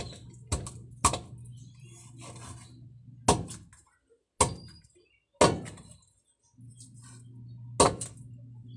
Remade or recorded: recorded